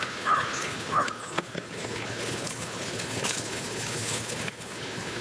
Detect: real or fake fake